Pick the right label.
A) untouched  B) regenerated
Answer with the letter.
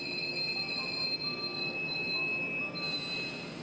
A